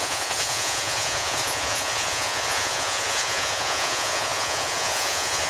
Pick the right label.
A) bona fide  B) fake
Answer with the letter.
B